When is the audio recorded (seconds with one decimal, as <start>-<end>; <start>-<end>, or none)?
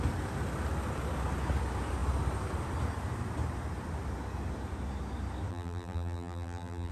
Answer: 0.0-5.5